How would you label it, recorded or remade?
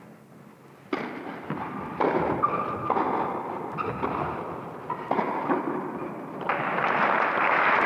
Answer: recorded